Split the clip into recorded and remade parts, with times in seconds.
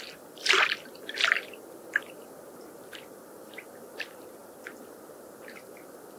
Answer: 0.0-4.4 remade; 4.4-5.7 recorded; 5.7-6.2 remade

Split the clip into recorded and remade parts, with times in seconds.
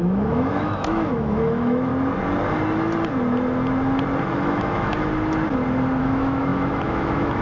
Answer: 0.0-1.9 remade; 1.9-4.2 recorded; 4.2-5.1 remade; 5.1-6.0 recorded; 6.0-7.4 remade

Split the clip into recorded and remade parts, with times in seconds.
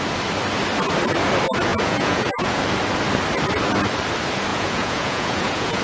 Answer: 0.0-1.7 recorded; 1.7-2.6 remade; 2.6-4.5 recorded; 4.5-5.8 remade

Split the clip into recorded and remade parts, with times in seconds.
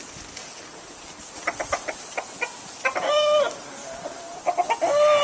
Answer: 0.0-0.4 recorded; 0.4-1.3 remade; 1.3-3.8 recorded; 3.8-4.4 remade; 4.4-5.2 recorded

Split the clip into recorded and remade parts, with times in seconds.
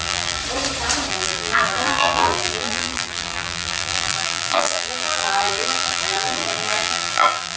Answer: 0.0-0.4 remade; 0.4-1.1 recorded; 1.1-7.6 remade